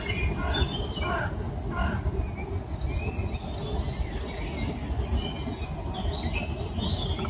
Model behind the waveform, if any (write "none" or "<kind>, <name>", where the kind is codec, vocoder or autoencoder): none